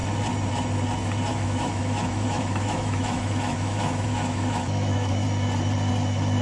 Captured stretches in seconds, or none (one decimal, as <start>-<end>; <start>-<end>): 0.0-1.3; 5.1-6.4